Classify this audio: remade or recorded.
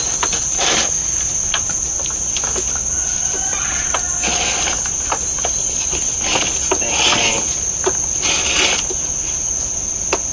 recorded